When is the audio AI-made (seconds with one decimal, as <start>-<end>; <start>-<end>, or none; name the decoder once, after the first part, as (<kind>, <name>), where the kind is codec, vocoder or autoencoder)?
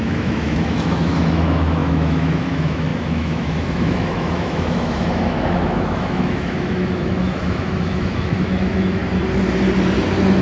0.0-9.0 (autoencoder, DAC-VAE)